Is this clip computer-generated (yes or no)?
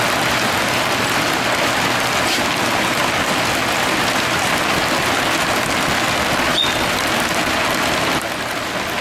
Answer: no